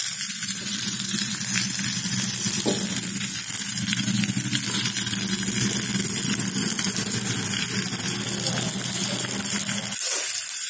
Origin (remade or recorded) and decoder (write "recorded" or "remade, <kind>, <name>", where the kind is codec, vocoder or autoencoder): recorded